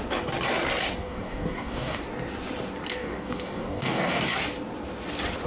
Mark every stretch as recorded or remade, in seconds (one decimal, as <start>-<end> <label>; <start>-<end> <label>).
0.0-1.0 recorded; 1.0-2.0 remade; 2.0-2.9 recorded; 2.9-4.2 remade; 4.2-5.5 recorded